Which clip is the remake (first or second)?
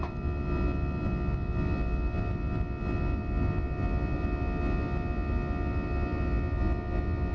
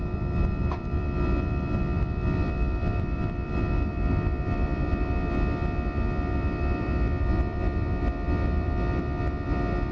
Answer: second